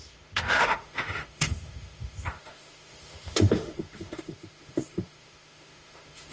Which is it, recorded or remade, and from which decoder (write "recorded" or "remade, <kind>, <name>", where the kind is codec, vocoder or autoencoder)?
remade, autoencoder, DAC-VAE